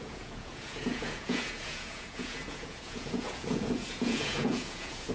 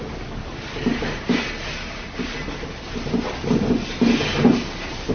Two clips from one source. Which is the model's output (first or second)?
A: first